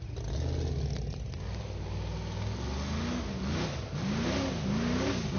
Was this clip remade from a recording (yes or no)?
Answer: no